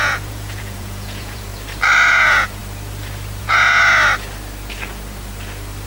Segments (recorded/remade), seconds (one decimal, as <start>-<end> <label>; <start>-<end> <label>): 0.0-1.5 remade; 1.5-2.1 recorded; 2.1-2.6 remade; 2.6-3.4 recorded; 3.4-3.8 remade; 3.8-5.9 recorded